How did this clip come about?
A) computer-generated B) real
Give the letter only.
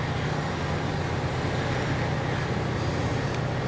B